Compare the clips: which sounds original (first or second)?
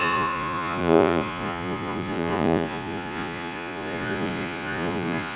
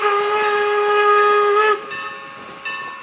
second